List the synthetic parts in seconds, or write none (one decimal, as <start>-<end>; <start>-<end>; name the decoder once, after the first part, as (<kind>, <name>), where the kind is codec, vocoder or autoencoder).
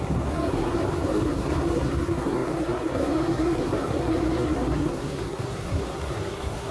0.0-6.7 (codec, SNAC)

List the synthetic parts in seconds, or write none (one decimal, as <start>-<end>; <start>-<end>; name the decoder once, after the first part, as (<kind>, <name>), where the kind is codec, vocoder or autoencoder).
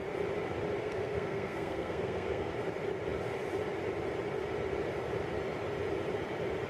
0.8-2.5 (codec, SNAC)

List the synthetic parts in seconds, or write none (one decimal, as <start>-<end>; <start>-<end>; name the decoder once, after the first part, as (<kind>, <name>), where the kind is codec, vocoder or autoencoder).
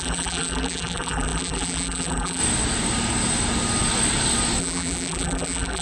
0.0-2.4 (vocoder, BigVGAN v2); 4.6-5.8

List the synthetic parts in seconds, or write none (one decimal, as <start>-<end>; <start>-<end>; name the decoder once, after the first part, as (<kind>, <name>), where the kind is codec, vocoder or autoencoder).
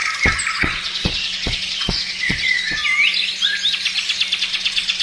0.6-2.8 (vocoder, Vocos); 4.4-5.0